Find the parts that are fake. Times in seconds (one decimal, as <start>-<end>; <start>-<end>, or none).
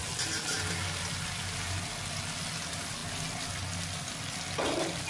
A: none